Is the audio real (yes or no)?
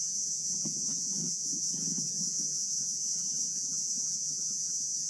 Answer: no